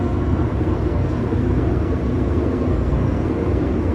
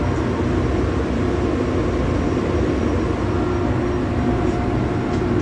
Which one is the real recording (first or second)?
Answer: second